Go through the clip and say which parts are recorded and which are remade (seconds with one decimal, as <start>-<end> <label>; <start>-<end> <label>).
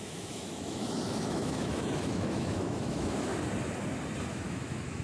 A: 0.0-3.3 remade; 3.3-4.3 recorded; 4.3-5.0 remade